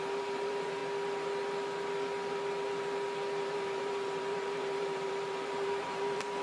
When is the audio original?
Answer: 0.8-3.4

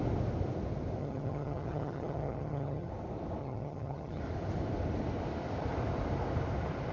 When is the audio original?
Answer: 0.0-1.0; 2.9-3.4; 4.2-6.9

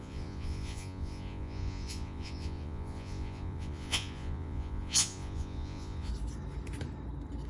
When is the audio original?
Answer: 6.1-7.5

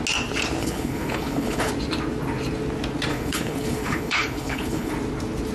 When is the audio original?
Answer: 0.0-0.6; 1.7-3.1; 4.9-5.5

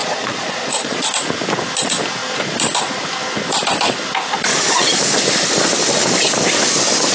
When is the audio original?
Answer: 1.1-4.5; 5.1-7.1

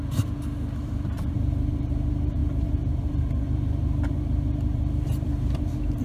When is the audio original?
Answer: none